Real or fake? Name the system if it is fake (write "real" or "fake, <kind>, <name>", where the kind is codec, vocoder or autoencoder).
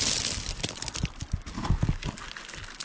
real